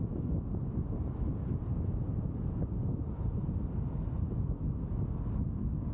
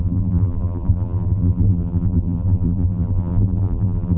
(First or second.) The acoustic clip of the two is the first